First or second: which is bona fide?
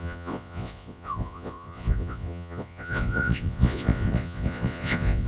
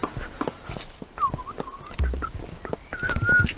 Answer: second